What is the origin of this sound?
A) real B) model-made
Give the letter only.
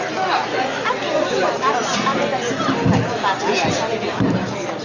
A